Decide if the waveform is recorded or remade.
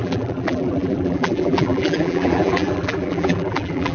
remade